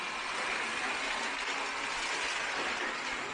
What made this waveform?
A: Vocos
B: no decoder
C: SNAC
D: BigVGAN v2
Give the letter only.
B